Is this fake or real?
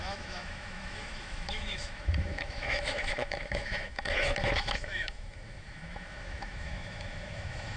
fake